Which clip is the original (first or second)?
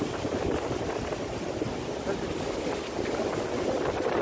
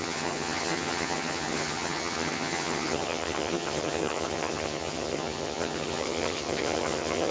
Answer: first